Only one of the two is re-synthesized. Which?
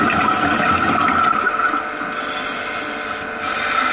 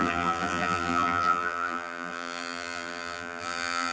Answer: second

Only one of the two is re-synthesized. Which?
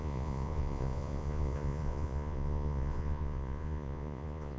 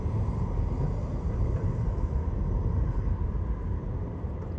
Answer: first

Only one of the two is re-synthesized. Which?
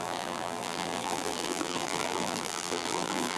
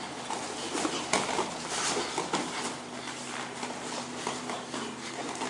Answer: first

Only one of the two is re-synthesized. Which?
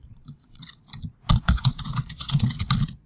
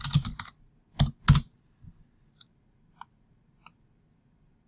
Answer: first